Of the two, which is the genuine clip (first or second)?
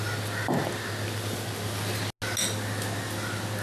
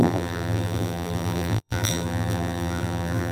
first